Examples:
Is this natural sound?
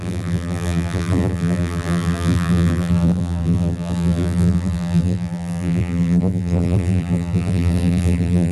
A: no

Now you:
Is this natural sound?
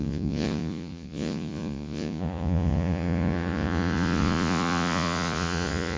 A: no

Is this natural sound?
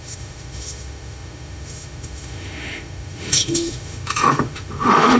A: no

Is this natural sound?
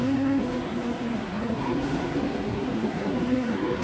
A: no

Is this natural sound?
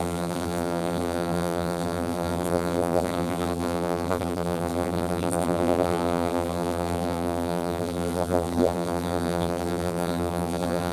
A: no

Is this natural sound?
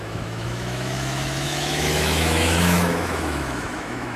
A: no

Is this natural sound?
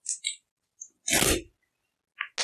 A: yes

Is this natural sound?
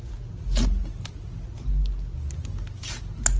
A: yes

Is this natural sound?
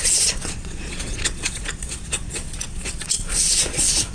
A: no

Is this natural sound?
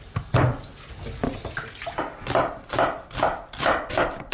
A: no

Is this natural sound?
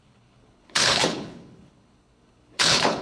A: no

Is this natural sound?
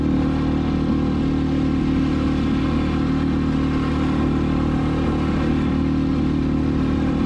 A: yes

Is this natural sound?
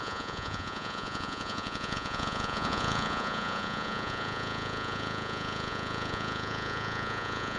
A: no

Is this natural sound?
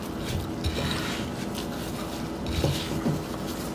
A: yes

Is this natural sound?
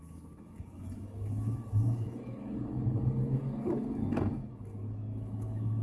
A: no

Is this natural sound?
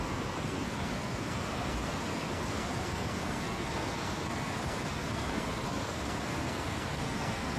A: no